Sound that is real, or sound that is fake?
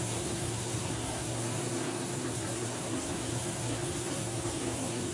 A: fake